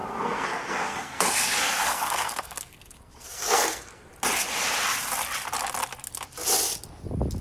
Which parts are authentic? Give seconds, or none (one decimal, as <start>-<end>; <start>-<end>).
4.1-7.4